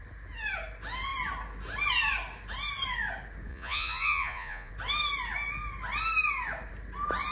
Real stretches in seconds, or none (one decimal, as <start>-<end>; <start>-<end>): 0.0-3.5; 4.7-7.3